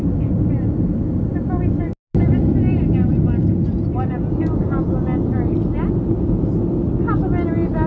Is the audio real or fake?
real